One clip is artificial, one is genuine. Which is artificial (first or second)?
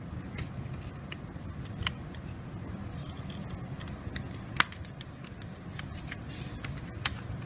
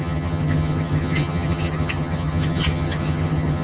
second